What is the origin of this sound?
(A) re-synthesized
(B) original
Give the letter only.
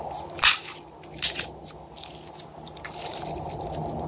B